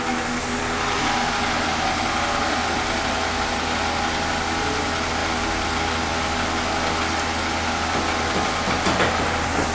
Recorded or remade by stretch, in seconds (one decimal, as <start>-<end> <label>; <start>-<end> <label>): 0.0-9.7 recorded